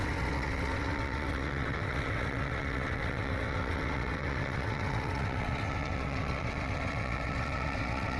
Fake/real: fake